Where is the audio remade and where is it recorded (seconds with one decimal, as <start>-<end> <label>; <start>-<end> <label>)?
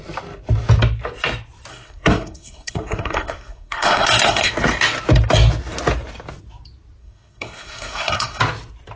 0.0-1.7 recorded; 1.7-4.5 remade; 4.5-7.0 recorded; 7.0-8.4 remade; 8.4-9.0 recorded